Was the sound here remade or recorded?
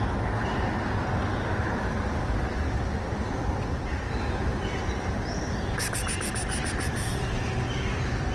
remade